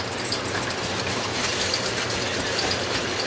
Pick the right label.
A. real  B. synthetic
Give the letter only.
A